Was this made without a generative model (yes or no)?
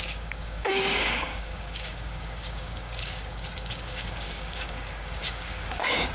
no